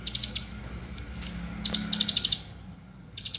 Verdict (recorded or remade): remade